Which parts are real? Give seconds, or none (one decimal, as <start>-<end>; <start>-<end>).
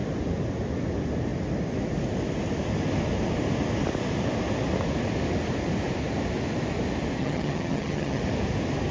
0.0-7.2; 8.2-8.9